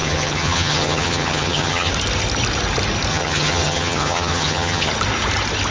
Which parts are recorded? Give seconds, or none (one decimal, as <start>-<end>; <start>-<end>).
1.9-3.1; 4.9-5.7